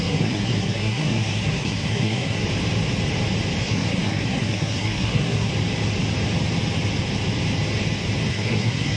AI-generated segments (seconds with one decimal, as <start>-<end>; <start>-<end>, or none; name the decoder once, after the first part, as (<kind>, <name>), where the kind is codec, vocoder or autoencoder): 0.0-2.4 (codec, SNAC); 3.6-5.5; 8.3-9.0